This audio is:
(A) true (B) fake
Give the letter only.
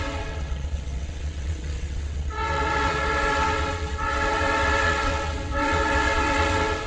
B